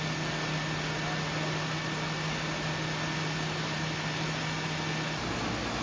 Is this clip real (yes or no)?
yes